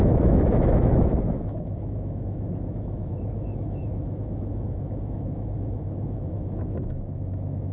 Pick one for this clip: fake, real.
fake